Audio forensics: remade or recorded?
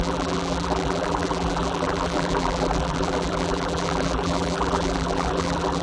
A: remade